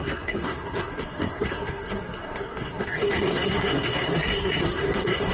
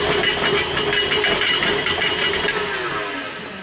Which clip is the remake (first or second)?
first